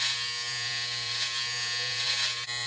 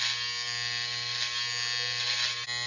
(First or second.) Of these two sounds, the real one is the second